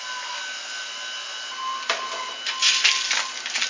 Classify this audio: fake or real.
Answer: real